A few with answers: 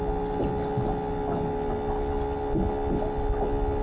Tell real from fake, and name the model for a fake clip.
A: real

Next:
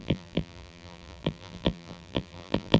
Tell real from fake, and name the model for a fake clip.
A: fake, vocoder, BigVGAN v2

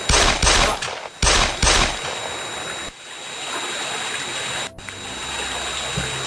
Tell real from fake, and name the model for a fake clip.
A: real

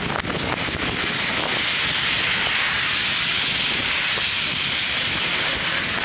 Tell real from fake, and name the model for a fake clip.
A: real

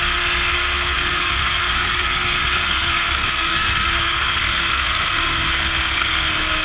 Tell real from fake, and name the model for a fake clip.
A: fake, codec, SNAC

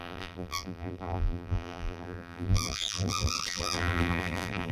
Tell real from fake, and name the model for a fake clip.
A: fake, vocoder, BigVGAN v2